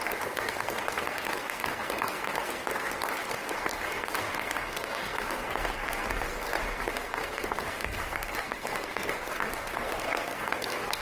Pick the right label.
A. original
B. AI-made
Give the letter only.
B